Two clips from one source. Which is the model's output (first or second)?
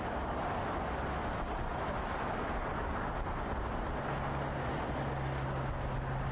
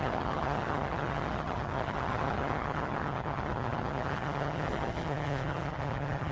second